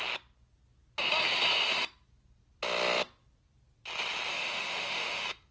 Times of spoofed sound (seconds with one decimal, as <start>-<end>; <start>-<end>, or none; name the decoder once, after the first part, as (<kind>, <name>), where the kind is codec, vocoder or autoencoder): 4.3-5.5 (autoencoder, DAC-VAE)